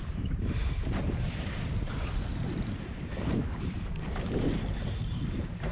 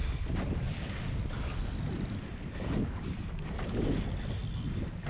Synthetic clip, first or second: first